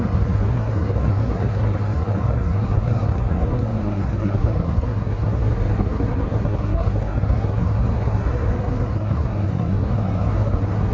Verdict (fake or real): fake